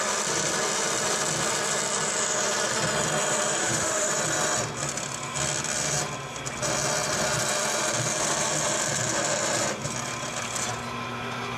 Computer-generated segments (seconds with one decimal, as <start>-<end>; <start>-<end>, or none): 3.6-4.1